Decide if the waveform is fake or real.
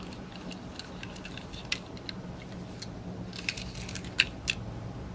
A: real